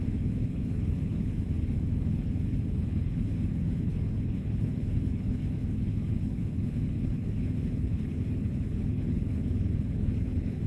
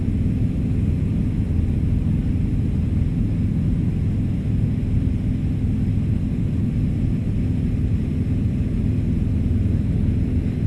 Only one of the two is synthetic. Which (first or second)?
first